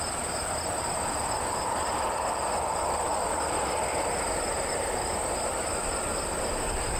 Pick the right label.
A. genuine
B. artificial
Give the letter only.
A